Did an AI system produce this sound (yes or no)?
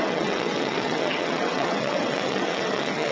yes